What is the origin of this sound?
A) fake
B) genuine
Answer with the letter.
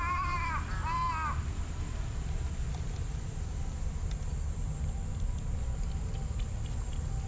B